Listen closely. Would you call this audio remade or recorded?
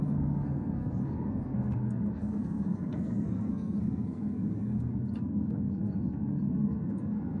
remade